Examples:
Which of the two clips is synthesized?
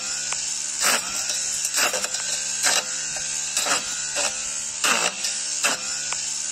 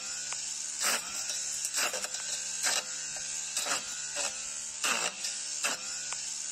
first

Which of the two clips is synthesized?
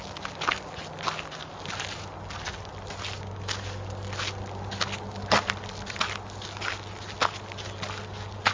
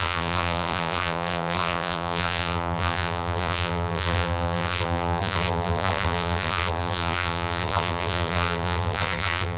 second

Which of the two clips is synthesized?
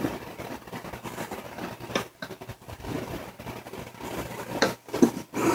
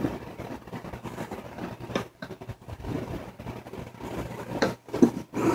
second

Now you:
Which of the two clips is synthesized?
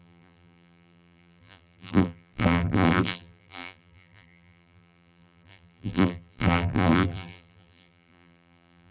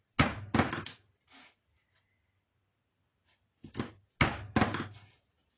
first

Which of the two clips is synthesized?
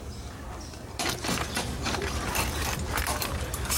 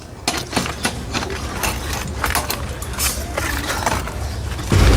first